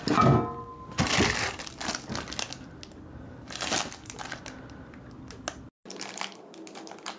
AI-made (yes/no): no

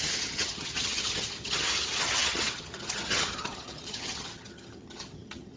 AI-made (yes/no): yes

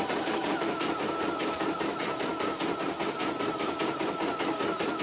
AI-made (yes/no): no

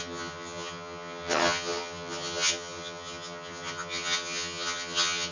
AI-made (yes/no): yes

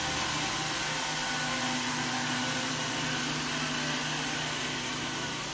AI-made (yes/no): no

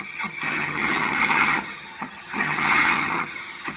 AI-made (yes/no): yes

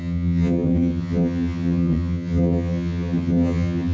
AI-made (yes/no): yes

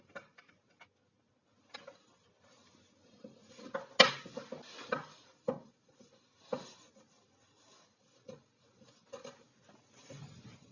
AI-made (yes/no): no